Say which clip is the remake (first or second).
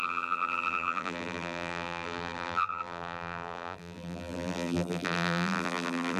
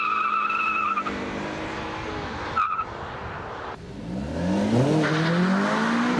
first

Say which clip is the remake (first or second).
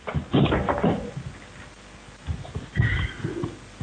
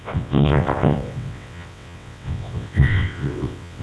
second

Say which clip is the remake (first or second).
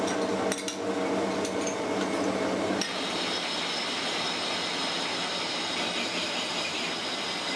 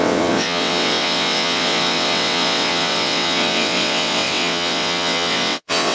second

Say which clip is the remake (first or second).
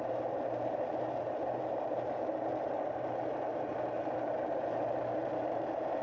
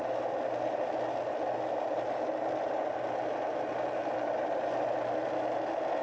first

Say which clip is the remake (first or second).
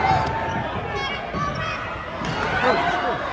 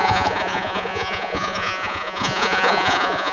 second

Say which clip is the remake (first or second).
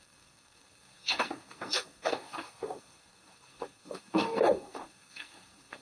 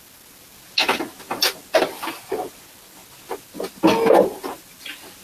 first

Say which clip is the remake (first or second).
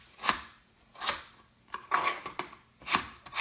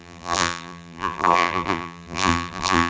second